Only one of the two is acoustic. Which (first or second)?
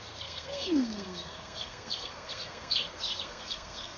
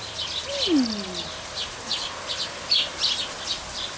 second